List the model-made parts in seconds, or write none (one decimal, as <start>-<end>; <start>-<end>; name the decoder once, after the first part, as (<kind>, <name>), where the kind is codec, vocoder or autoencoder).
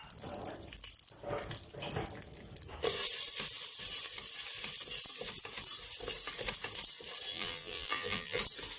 7.3-8.4 (vocoder, BigVGAN v2)